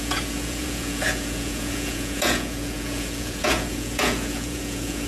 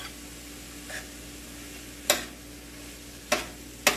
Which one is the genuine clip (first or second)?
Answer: second